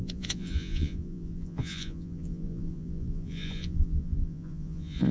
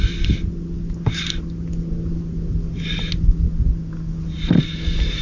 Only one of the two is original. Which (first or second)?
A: second